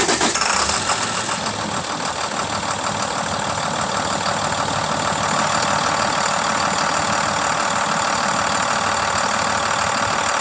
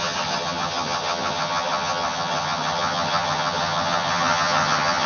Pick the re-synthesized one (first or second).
second